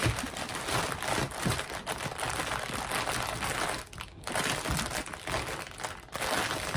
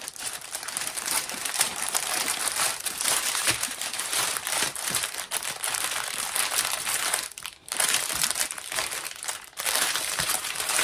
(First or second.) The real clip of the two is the first